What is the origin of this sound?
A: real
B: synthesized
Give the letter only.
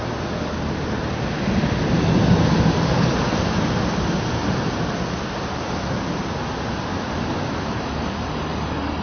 A